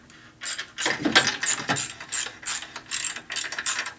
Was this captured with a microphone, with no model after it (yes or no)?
yes